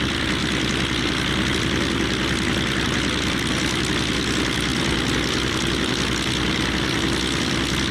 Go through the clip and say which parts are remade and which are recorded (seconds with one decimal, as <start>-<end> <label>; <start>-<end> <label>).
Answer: 0.0-7.9 recorded